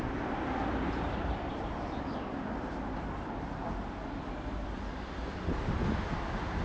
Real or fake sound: fake